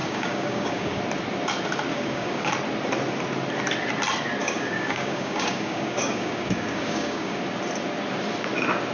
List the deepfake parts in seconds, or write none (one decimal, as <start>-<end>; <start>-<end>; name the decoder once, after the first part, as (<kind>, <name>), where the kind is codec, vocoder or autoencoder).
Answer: 0.0-1.0 (codec, DAC); 1.9-2.5; 4.4-7.4